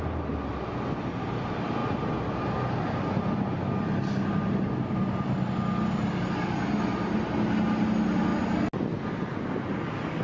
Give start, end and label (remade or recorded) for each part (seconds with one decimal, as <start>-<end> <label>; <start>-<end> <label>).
0.0-10.2 recorded